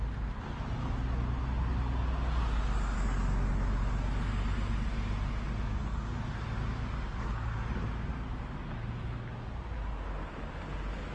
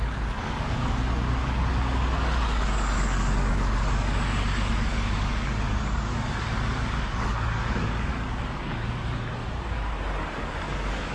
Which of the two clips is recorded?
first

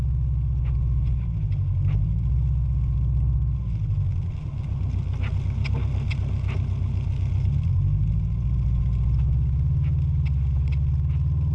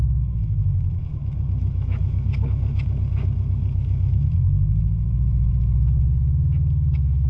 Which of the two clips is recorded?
first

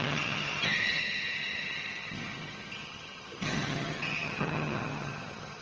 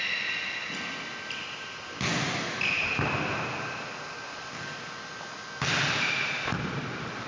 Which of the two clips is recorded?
second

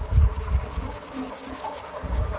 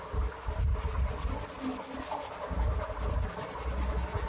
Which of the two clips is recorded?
second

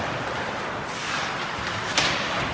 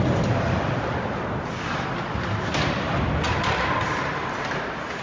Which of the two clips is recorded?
second